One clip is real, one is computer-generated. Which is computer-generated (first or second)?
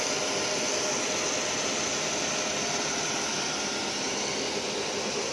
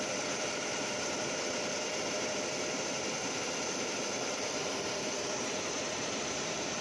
second